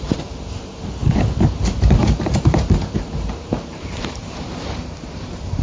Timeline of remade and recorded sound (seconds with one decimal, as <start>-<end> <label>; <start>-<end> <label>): 0.0-1.0 remade; 1.0-1.7 recorded; 1.7-5.6 remade